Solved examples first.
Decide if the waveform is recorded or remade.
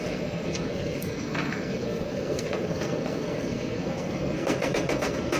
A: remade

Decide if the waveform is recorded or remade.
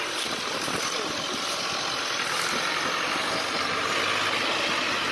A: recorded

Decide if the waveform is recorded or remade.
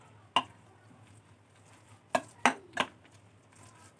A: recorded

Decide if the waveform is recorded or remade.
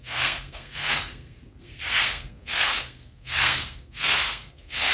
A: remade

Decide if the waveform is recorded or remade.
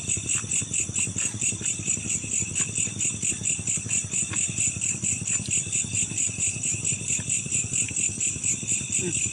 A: recorded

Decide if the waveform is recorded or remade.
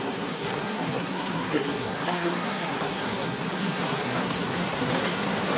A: remade